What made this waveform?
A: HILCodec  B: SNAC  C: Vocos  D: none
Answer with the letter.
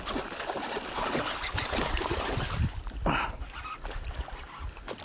D